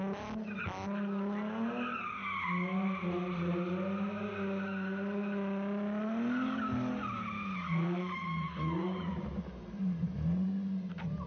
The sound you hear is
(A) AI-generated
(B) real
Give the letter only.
B